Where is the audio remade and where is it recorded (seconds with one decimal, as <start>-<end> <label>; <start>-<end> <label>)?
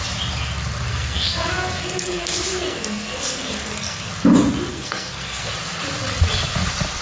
0.0-0.9 recorded; 0.9-4.1 remade; 4.1-4.7 recorded; 4.7-5.5 remade; 5.5-7.0 recorded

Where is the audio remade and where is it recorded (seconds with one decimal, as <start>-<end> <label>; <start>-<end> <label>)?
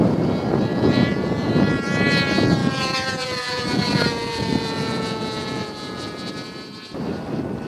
0.0-0.7 recorded; 0.7-1.5 remade; 1.5-2.6 recorded; 2.6-6.3 remade; 6.3-7.7 recorded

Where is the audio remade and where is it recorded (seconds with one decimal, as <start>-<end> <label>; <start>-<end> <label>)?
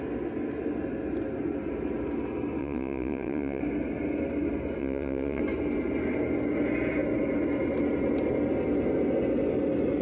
0.0-2.6 recorded; 2.6-3.6 remade; 3.6-4.8 recorded; 4.8-5.4 remade; 5.4-10.0 recorded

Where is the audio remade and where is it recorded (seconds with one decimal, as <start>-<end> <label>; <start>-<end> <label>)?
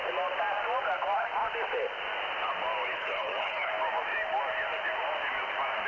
0.0-2.9 recorded; 2.9-3.7 remade; 3.7-5.9 recorded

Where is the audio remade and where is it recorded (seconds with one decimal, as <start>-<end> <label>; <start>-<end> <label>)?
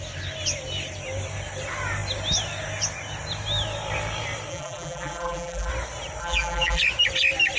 0.0-4.5 recorded; 4.5-5.7 remade; 5.7-6.2 recorded; 6.2-6.8 remade; 6.8-7.6 recorded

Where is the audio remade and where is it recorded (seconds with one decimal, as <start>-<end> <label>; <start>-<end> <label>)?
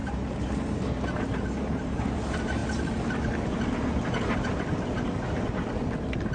0.0-2.0 remade; 2.0-6.3 recorded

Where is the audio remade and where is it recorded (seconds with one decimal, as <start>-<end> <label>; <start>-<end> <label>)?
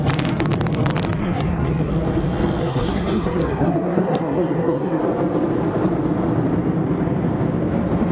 0.0-1.2 recorded; 1.2-1.9 remade; 1.9-2.6 recorded; 2.6-5.0 remade; 5.0-8.1 recorded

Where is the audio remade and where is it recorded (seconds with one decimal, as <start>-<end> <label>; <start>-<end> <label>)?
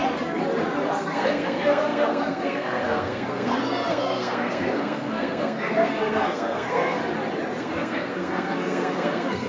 0.0-0.9 recorded; 0.9-7.0 remade; 7.0-7.6 recorded; 7.6-9.5 remade